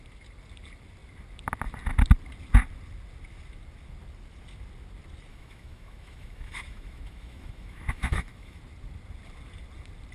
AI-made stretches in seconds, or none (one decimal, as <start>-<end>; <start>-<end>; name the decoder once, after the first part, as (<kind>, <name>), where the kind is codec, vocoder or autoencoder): 5.3-8.6 (autoencoder, DAC-VAE)